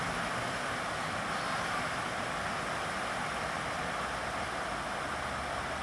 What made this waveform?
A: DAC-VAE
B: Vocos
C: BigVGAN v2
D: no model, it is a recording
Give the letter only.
D